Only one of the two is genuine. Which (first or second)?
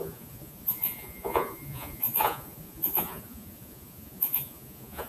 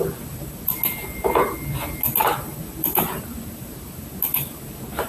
second